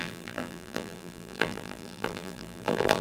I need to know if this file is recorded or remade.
remade